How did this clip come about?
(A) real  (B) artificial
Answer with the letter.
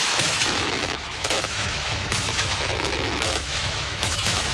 B